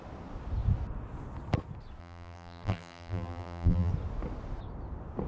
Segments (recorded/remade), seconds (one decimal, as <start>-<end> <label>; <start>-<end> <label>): 0.0-2.0 recorded; 2.0-3.9 remade; 3.9-5.3 recorded